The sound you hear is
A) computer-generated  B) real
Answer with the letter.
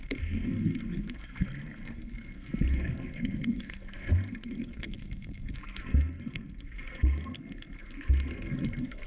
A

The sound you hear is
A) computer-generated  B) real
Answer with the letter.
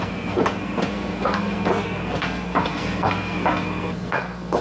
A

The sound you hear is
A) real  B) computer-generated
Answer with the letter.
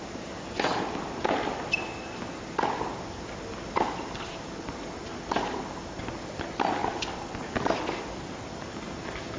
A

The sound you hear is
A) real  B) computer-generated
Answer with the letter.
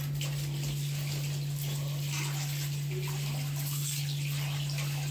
A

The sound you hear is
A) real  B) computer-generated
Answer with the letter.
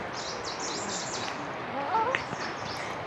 A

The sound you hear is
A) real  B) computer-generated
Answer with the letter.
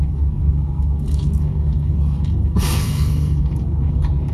B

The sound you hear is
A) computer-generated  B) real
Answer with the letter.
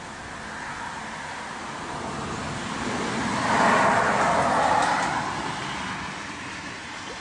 B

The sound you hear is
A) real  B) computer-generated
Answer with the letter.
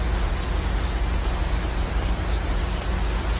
A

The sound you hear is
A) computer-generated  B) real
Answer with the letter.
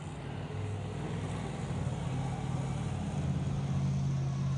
B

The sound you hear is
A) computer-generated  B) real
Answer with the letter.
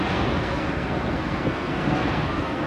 A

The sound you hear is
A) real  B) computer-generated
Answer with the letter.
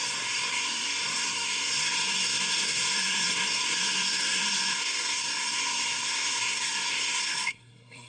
B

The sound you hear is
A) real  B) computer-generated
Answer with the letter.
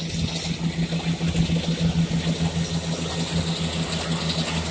A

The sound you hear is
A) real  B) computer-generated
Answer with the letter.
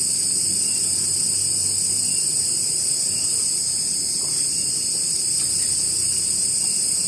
A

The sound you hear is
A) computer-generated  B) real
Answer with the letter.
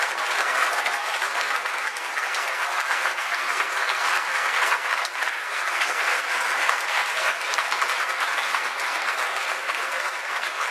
A